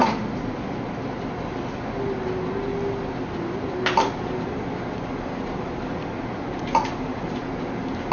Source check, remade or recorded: recorded